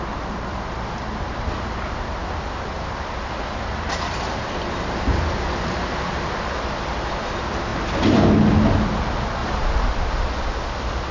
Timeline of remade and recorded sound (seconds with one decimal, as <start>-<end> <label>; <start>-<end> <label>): 0.0-9.4 recorded; 9.4-9.9 remade; 9.9-11.1 recorded